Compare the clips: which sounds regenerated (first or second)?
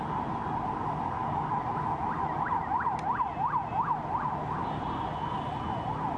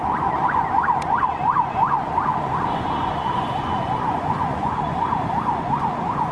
second